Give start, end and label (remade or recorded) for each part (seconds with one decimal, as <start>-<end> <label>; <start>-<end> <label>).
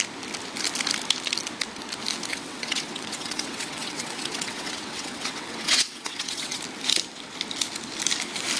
0.0-2.3 recorded; 2.3-6.6 remade; 6.6-8.6 recorded